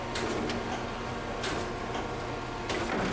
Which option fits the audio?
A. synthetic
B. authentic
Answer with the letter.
B